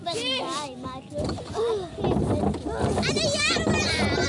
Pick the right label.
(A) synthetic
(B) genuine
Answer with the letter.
B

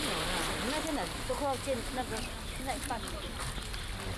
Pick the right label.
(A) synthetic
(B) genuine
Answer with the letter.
B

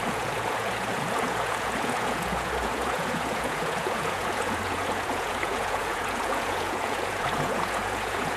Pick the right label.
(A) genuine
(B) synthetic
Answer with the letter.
B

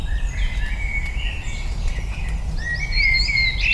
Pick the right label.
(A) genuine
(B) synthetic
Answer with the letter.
A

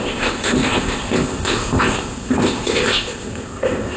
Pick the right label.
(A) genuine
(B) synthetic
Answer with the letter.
B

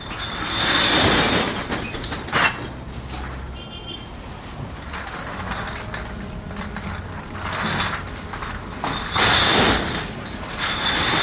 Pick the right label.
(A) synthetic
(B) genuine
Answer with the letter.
B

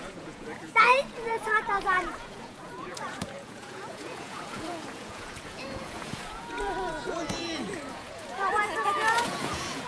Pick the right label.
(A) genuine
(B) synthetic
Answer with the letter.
B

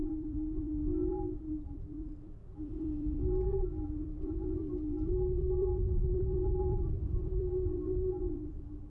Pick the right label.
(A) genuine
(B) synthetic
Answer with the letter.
B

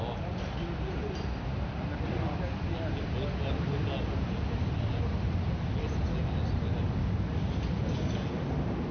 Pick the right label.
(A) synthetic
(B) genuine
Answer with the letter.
B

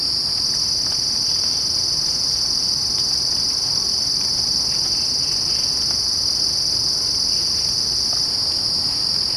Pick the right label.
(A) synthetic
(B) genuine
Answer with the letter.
B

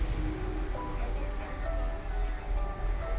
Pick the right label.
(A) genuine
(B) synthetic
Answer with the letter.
A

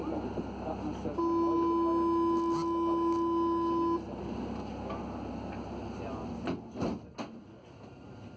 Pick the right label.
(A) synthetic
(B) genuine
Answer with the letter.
B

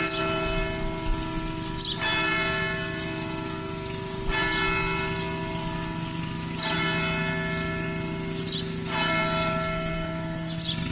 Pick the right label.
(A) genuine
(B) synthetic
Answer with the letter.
A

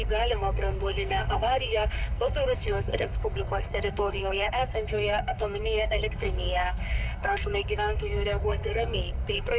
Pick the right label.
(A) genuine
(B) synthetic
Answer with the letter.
B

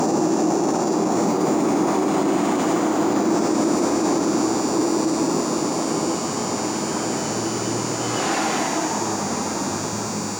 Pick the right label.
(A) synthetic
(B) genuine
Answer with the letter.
B